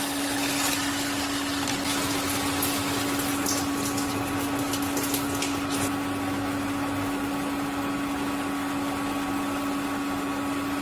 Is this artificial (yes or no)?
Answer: no